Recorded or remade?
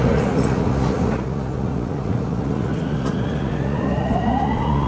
remade